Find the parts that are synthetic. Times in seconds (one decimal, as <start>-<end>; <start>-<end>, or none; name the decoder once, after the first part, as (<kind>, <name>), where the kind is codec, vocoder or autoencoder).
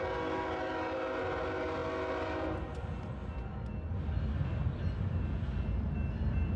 none